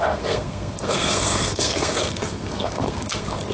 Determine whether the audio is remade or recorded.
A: remade